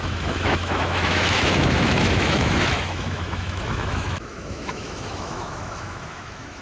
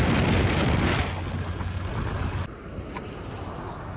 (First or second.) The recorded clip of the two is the second